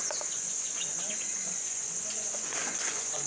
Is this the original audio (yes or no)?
no